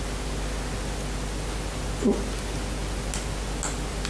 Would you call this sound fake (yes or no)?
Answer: no